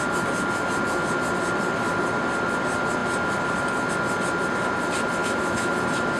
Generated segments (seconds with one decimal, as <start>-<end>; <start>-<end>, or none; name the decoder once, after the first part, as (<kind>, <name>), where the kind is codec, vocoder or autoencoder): 5.2-5.7 (autoencoder, DAC-VAE)